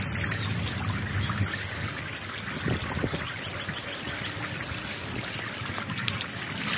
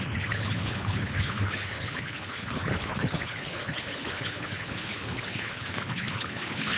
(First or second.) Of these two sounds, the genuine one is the first